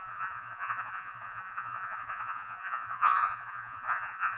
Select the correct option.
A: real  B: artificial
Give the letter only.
B